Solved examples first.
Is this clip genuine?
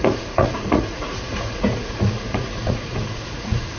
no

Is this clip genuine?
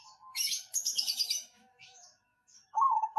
no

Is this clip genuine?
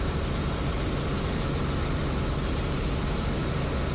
yes